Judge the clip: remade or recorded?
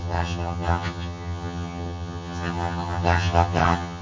remade